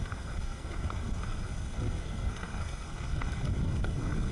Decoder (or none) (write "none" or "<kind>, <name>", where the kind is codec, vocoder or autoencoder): codec, SNAC